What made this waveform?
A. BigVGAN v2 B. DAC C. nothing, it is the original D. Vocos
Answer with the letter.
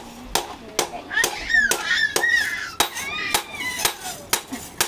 C